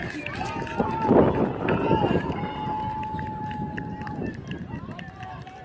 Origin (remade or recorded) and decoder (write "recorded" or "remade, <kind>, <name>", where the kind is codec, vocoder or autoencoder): recorded